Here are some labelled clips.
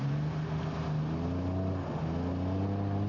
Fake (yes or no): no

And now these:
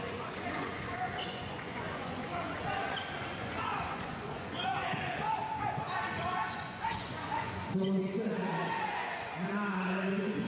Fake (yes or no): yes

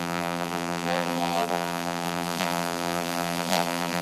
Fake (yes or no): yes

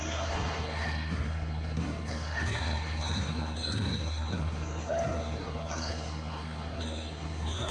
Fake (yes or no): yes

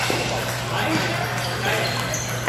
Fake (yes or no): no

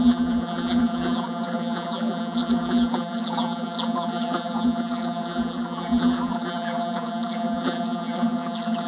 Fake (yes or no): yes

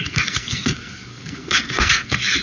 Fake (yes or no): yes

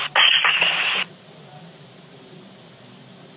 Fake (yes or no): no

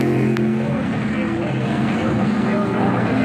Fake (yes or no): yes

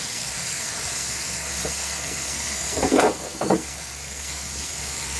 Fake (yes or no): yes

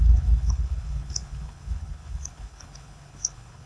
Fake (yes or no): yes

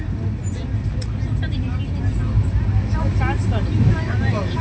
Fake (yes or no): no